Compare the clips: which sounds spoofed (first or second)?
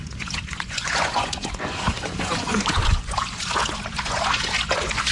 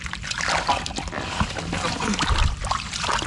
first